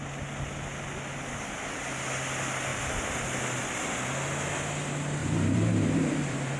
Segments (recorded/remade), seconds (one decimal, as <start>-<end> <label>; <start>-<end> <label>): 0.0-2.7 recorded; 2.7-3.4 remade; 3.4-5.2 recorded; 5.2-6.6 remade